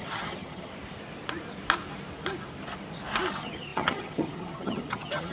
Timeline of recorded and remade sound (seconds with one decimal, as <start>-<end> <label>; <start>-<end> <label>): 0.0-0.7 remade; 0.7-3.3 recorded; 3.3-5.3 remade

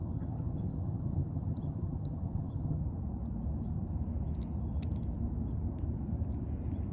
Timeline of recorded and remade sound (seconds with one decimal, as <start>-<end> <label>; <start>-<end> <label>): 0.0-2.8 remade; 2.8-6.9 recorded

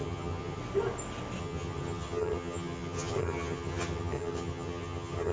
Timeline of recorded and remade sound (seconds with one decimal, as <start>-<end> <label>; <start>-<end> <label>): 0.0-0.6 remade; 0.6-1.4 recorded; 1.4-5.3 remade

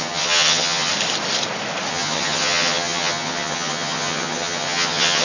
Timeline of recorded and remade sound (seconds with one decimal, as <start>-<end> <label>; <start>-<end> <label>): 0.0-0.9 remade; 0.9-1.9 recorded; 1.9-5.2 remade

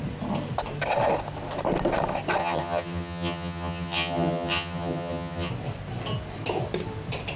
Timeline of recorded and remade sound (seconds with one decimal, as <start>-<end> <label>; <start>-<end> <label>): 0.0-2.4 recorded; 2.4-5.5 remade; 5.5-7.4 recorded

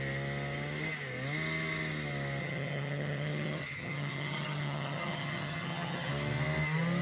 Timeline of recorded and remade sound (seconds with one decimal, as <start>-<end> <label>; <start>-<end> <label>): 0.0-2.4 recorded; 2.4-6.1 remade; 6.1-7.0 recorded

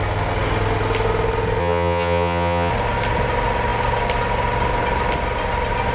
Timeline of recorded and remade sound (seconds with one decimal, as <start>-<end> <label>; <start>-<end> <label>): 0.0-1.6 recorded; 1.6-2.7 remade; 2.7-5.9 recorded